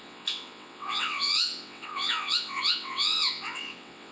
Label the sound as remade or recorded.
remade